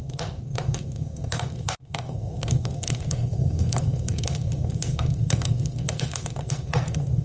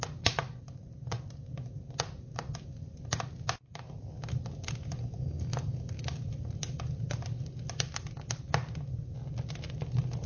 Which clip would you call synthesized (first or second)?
first